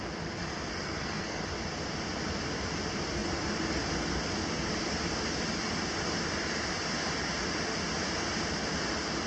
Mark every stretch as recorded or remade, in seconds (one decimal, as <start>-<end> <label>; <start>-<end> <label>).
0.0-0.4 recorded; 0.4-1.4 remade; 1.4-9.3 recorded